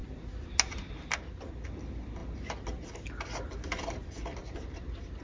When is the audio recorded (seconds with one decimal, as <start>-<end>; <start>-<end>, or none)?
0.0-5.2